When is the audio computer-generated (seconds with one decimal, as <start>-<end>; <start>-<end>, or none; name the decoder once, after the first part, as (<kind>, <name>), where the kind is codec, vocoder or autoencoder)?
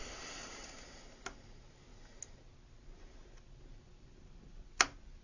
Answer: none